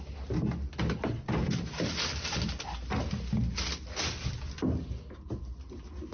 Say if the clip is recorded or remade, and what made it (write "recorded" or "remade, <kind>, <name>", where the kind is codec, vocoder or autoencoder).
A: recorded